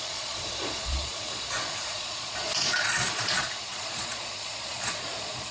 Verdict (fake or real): fake